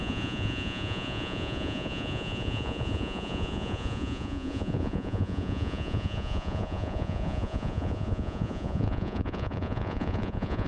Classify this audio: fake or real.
fake